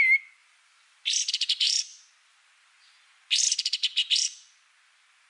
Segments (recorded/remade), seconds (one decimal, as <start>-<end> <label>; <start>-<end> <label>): 0.0-0.4 recorded; 0.4-1.3 remade; 1.3-5.3 recorded